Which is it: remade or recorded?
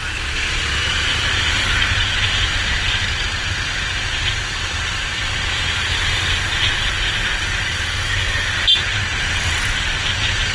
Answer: recorded